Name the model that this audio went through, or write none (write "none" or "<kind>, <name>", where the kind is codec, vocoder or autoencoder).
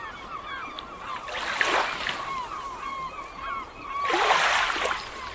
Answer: none